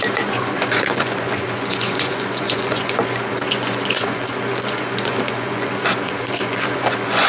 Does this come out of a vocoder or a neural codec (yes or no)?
yes